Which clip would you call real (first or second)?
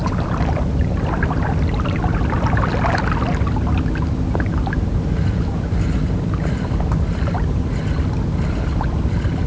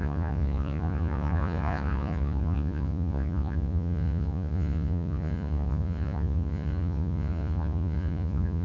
first